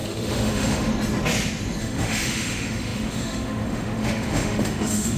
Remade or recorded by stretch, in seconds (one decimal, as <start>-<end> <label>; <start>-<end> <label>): 0.0-0.9 remade; 0.9-1.8 recorded; 1.8-5.2 remade